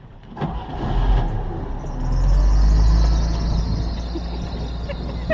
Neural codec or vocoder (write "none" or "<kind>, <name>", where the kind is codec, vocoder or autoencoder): none